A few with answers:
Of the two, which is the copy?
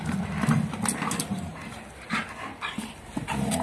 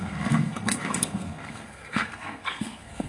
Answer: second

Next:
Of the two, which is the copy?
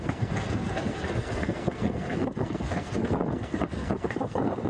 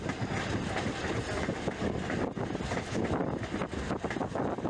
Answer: first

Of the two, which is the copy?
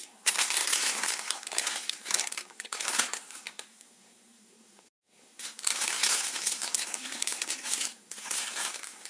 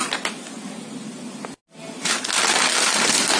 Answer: first